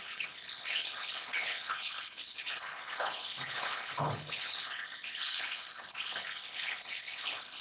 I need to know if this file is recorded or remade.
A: remade